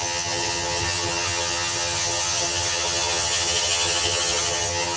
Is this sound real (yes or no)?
no